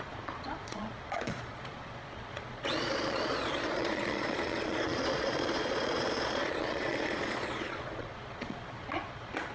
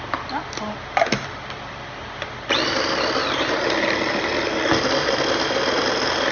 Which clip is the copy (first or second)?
first